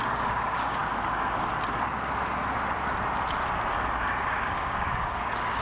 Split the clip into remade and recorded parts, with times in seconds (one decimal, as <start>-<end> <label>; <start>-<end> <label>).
0.0-0.8 remade; 0.8-4.2 recorded; 4.2-5.6 remade